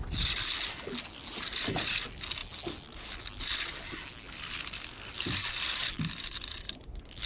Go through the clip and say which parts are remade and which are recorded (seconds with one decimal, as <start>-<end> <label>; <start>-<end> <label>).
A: 0.0-7.3 recorded